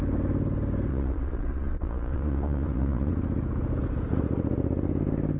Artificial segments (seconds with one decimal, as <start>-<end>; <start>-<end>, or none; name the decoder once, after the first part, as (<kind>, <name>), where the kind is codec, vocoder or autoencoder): 0.9-3.1 (vocoder, Vocos)